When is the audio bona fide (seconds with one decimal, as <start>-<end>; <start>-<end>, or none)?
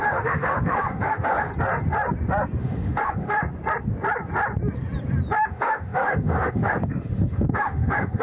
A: 1.5-2.6; 3.4-5.5